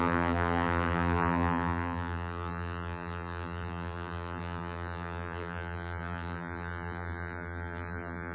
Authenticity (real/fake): fake